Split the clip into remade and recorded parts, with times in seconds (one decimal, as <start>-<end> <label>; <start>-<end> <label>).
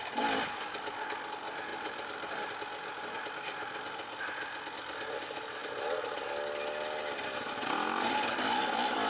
0.0-9.1 recorded